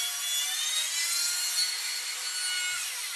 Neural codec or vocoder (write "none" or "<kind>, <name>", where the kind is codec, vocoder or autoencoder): none